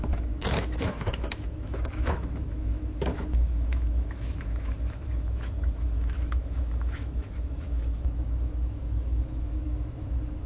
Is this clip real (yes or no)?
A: no